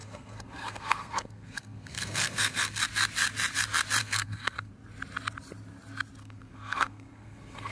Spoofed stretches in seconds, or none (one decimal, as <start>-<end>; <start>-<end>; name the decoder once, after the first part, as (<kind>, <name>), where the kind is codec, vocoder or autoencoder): 0.0-2.8 (codec, SNAC); 4.0-4.7; 6.2-7.7